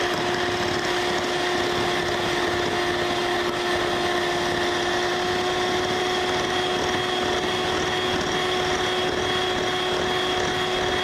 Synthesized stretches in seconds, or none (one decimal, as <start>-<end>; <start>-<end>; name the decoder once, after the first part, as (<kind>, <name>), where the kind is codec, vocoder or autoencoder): none